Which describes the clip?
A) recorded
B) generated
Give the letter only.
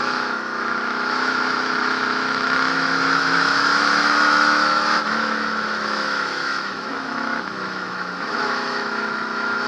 B